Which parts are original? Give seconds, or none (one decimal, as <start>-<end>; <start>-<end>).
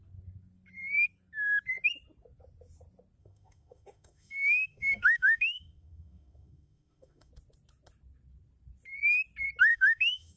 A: 0.0-3.2; 7.3-9.7